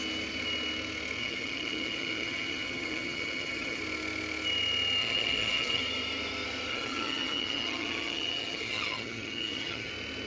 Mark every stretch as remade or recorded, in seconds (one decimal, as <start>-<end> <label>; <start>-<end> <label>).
0.0-1.2 recorded; 1.2-3.8 remade; 3.8-5.0 recorded; 5.0-5.8 remade; 5.8-6.7 recorded; 6.7-9.9 remade; 9.9-10.3 recorded